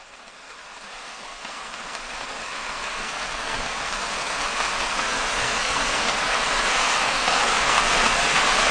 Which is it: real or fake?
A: fake